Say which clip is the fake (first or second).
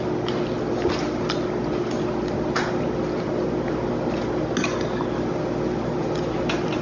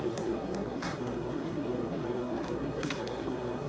second